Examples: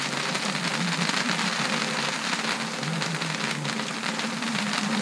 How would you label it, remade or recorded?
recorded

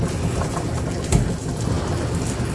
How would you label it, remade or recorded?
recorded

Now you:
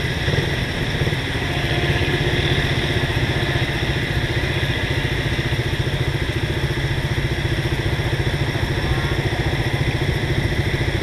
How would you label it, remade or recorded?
recorded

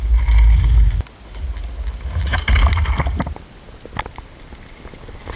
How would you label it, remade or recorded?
recorded